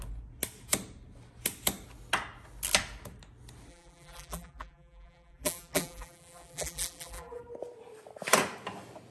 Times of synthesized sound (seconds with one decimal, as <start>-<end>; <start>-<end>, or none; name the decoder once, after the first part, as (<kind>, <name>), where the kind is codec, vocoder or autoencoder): 3.7-7.4 (vocoder, BigVGAN v2)

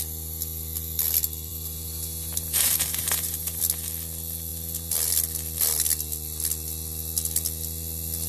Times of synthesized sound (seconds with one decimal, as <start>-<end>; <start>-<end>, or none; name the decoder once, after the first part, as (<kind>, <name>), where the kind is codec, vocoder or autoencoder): 1.5-3.6 (vocoder, BigVGAN v2)

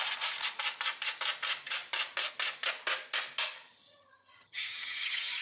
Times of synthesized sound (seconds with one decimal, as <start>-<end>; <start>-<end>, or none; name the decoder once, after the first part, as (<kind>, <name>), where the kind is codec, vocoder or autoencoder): 3.7-5.4 (vocoder, HiFi-GAN)

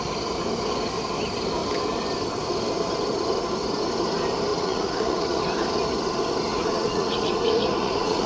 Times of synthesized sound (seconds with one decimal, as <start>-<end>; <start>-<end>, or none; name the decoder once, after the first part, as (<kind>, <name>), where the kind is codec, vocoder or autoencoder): 4.5-5.4 (vocoder, Vocos); 6.5-8.3